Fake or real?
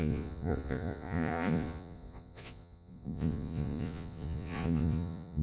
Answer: fake